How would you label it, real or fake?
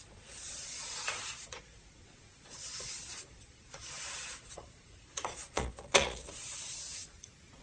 fake